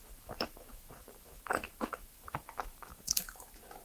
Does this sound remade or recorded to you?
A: remade